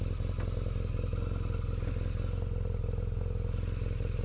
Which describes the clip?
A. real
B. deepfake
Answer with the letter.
A